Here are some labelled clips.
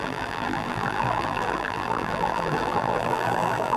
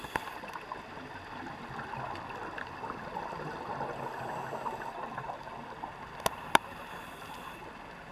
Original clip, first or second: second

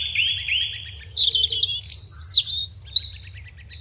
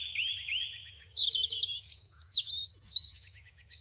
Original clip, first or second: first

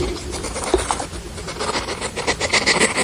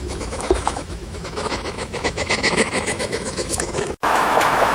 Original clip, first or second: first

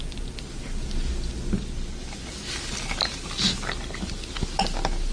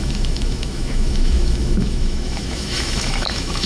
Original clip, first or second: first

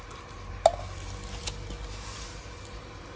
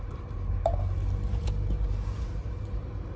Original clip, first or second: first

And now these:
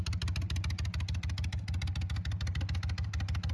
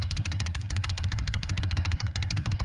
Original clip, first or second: first